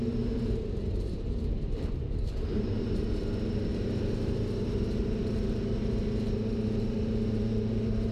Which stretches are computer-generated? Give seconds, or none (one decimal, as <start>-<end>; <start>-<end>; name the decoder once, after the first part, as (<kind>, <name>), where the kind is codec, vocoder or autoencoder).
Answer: 0.0-8.1 (vocoder, BigVGAN v2)